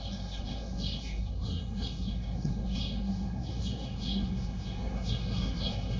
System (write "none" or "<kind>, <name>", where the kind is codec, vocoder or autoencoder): codec, SNAC